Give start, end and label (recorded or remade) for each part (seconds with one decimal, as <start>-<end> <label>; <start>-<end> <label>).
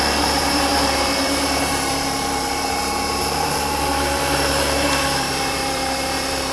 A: 0.0-6.5 remade